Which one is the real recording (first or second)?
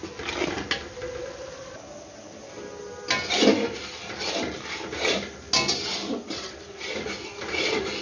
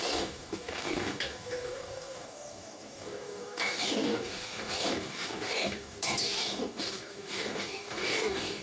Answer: first